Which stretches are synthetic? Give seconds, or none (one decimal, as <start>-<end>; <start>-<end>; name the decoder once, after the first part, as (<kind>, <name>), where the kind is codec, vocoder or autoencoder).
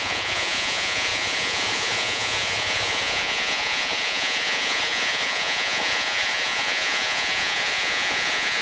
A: 0.0-8.6 (vocoder, Vocos)